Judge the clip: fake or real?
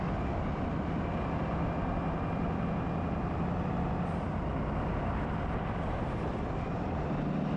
real